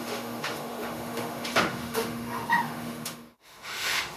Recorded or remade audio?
remade